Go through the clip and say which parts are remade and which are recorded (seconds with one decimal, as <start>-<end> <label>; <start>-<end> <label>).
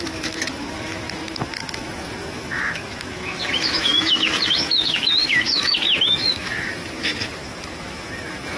0.0-8.6 remade